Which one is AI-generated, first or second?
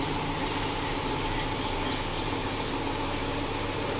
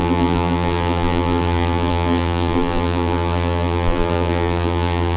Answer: second